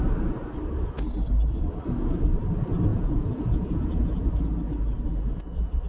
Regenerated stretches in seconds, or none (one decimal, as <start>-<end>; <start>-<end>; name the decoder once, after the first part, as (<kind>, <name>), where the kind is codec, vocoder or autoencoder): 2.9-4.2 (vocoder, Vocos)